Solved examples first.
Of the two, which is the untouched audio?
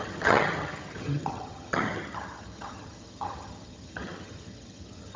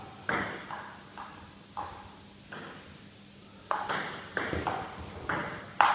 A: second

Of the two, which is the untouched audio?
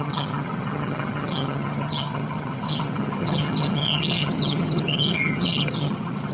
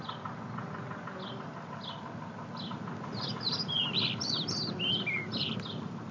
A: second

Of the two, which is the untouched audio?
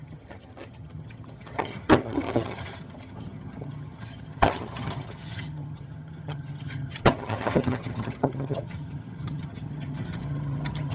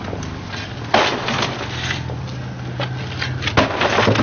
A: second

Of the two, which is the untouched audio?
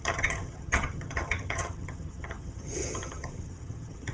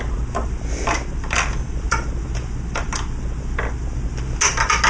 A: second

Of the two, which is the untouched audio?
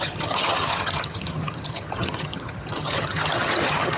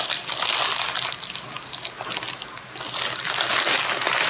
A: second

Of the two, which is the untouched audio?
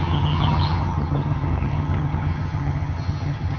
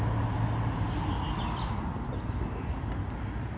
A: second